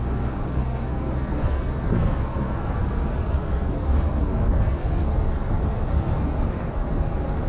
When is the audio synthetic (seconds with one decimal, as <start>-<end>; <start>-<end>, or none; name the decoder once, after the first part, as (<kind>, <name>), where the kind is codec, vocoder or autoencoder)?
0.0-7.5 (codec, SNAC)